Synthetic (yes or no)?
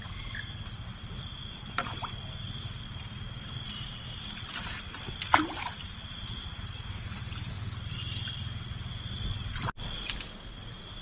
no